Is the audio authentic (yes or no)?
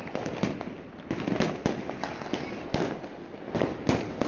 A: yes